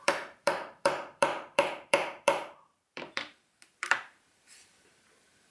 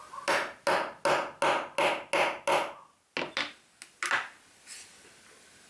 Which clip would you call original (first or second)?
second